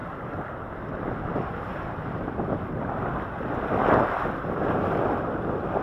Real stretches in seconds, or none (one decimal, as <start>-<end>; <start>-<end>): 0.0-5.8

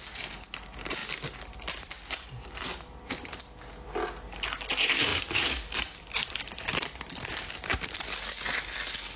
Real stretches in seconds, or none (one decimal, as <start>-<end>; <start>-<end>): 0.0-1.0; 1.9-5.1; 7.3-9.2

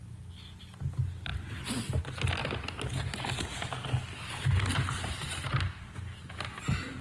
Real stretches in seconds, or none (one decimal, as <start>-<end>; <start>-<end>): 0.0-7.0

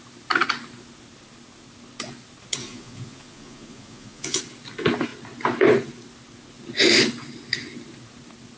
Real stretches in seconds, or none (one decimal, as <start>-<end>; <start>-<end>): 0.0-2.6; 4.4-8.6

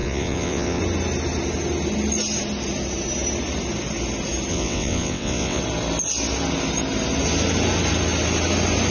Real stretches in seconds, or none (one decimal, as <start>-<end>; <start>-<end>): 0.8-4.5; 5.6-8.9

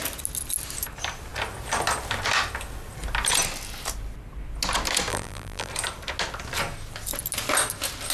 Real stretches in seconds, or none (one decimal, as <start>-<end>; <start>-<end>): 0.0-5.1; 5.7-8.1